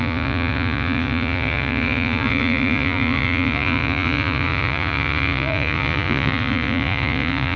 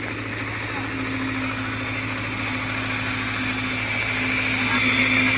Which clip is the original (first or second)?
second